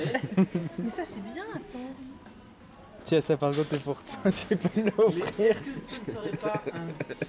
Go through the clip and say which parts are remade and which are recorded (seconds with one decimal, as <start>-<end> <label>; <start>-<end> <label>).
0.0-7.3 recorded